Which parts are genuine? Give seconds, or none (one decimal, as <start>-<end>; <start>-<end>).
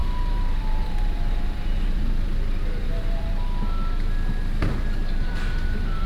3.3-5.0